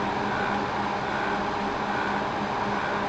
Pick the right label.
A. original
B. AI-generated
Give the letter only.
A